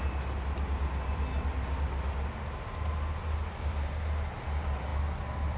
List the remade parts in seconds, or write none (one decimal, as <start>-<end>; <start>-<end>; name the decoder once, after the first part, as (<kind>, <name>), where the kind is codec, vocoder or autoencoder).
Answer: none